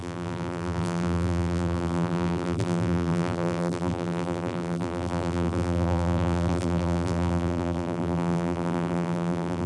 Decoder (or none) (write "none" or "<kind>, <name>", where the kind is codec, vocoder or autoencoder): vocoder, BigVGAN v2